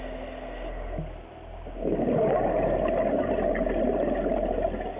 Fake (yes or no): no